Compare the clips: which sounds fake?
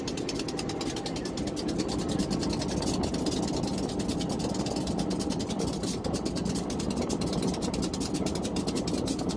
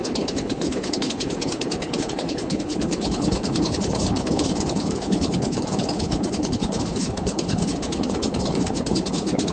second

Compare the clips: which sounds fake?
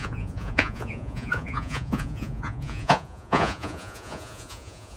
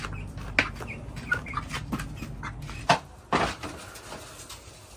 first